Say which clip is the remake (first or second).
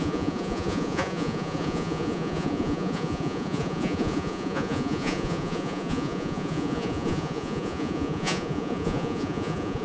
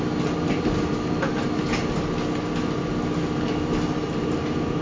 first